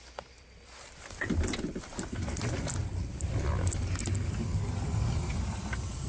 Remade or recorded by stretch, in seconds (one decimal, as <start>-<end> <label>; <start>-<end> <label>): 0.0-6.1 recorded